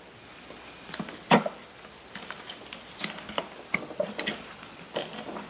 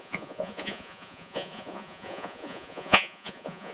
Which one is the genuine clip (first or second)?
first